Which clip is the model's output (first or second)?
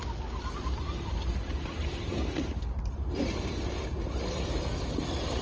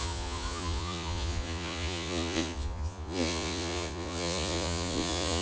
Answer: second